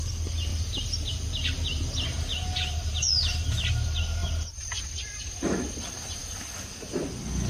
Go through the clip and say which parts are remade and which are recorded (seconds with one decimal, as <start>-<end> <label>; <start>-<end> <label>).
0.0-4.2 recorded; 4.2-5.2 remade; 5.2-7.5 recorded